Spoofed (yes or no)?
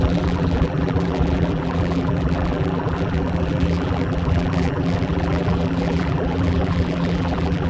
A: yes